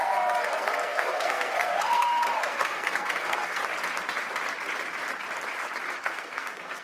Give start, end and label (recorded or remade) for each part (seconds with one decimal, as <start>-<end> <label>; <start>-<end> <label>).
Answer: 0.0-3.6 remade; 3.6-5.9 recorded; 5.9-6.8 remade